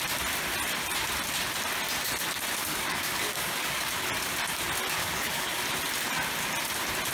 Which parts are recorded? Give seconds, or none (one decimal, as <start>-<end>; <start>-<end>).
0.0-2.6; 3.9-5.0; 5.6-7.1